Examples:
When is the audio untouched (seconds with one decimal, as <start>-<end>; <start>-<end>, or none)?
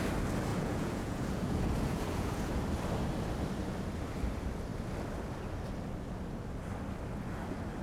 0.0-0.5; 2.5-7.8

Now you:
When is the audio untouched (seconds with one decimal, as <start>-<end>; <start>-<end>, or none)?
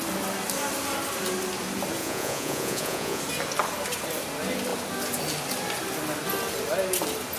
0.0-2.0; 3.2-7.4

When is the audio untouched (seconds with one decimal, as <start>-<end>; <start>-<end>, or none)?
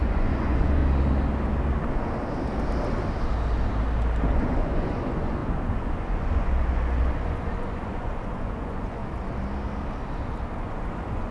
0.8-4.3; 9.0-10.6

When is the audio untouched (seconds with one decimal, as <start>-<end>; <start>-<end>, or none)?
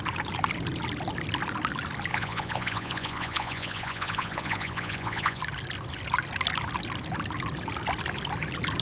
0.0-2.1; 5.4-8.8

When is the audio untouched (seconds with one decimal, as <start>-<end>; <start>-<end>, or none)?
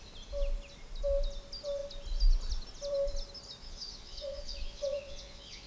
0.0-3.6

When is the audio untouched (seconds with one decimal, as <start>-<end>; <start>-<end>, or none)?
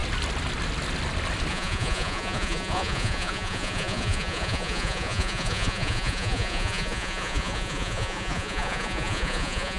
0.0-1.5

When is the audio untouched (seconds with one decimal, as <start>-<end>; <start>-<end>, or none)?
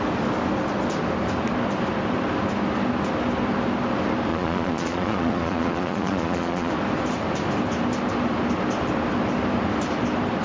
0.0-4.3; 6.7-10.4